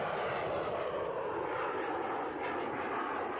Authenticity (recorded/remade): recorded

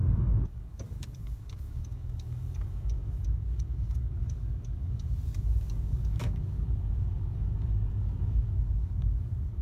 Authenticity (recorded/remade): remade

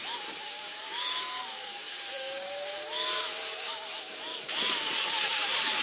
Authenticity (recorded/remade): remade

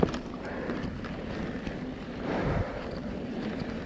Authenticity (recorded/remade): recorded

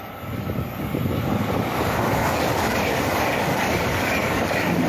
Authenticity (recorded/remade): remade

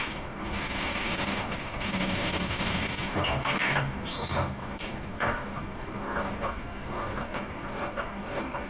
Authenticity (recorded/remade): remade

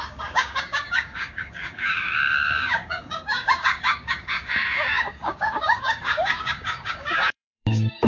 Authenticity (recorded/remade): remade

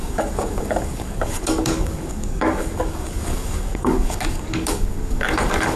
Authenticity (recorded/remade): remade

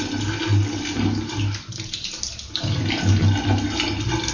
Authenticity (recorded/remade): recorded